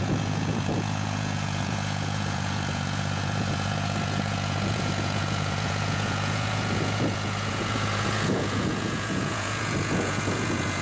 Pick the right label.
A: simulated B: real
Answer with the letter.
A